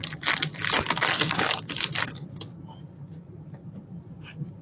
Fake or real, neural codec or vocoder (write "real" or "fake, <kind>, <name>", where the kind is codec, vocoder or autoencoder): real